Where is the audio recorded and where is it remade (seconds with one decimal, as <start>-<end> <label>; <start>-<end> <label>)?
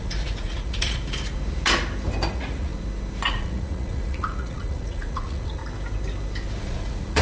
0.0-1.0 remade; 1.0-2.3 recorded; 2.3-2.7 remade; 2.7-3.3 recorded; 3.3-5.6 remade; 5.6-6.6 recorded; 6.6-7.2 remade